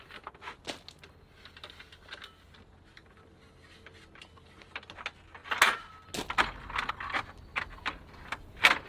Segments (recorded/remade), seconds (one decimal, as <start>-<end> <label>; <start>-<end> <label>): 0.0-8.9 recorded